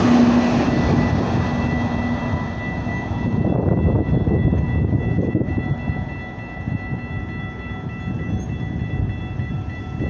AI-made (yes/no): no